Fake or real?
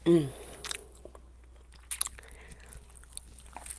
real